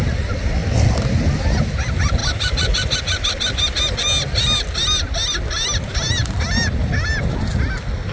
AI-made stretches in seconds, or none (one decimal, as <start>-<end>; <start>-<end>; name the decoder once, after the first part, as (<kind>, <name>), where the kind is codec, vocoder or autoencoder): none